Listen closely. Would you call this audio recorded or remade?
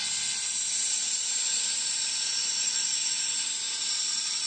recorded